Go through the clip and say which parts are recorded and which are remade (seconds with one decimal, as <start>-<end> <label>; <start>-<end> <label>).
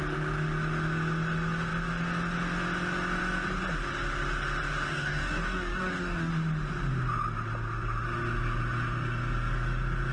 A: 0.0-4.9 recorded; 4.9-6.3 remade; 6.3-10.1 recorded